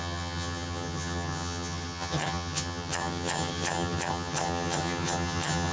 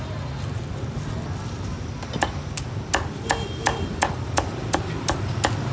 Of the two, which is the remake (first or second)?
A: first